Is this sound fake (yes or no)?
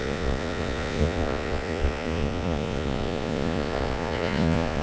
yes